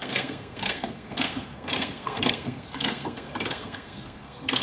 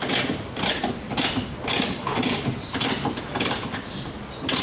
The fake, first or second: first